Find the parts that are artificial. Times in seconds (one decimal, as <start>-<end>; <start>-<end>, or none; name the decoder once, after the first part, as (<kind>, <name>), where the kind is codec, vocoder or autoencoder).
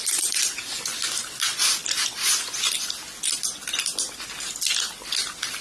none